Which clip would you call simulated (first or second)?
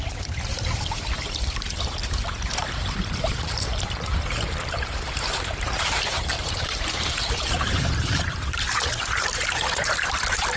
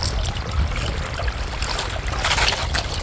first